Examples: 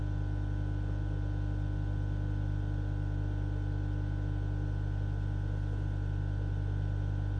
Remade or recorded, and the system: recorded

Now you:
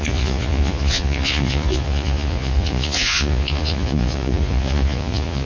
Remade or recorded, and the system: remade, vocoder, Vocos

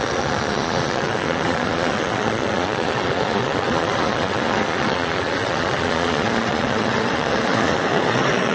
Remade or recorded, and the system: remade, vocoder, Vocos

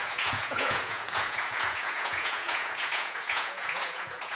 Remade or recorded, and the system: remade, vocoder, Vocos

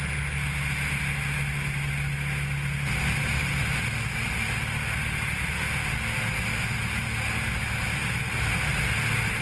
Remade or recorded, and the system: recorded